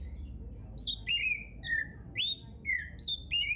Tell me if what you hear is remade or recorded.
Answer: recorded